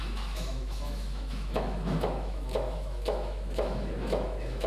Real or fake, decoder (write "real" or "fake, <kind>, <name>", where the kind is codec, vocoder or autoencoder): fake, autoencoder, DAC-VAE